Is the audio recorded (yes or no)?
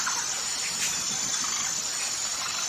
yes